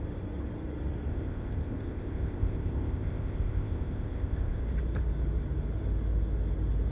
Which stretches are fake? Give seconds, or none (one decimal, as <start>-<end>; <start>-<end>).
1.1-4.6